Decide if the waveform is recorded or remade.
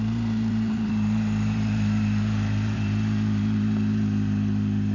remade